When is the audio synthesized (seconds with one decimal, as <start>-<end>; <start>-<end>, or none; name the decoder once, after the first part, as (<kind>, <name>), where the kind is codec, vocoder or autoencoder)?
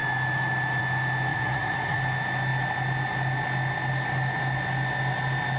1.3-2.0 (vocoder, Vocos)